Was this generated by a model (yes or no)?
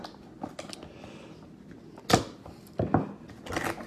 no